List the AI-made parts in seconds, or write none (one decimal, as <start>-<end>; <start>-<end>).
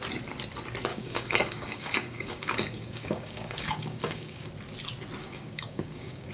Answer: 0.9-4.5; 5.2-6.3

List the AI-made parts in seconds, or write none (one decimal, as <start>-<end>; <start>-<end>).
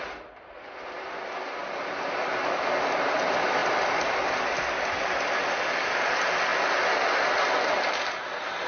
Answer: none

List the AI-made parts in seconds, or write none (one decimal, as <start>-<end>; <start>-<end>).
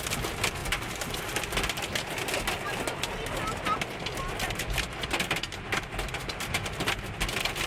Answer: none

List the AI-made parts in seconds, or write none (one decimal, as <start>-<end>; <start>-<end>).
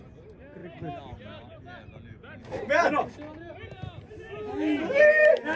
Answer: none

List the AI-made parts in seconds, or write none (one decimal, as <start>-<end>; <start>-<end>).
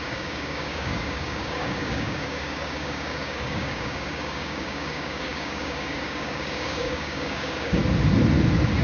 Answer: 0.0-7.8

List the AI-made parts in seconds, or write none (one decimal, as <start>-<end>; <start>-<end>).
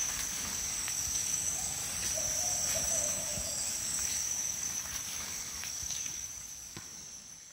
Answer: 0.0-1.8; 2.7-7.5